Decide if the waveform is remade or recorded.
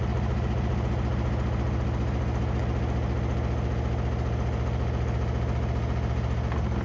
recorded